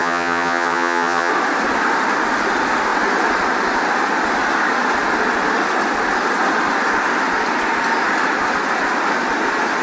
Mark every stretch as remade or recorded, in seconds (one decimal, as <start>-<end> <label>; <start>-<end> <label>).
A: 0.0-1.3 remade; 1.3-9.8 recorded